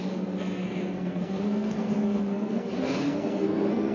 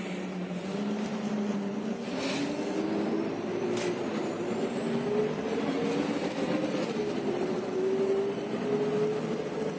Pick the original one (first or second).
second